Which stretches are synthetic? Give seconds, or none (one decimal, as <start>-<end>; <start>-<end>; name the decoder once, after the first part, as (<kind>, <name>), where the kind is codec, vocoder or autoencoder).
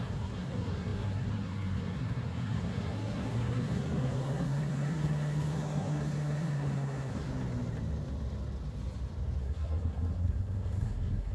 0.0-7.3 (codec, SNAC); 9.4-11.3